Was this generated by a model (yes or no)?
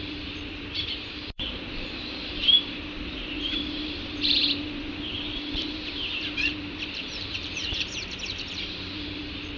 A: yes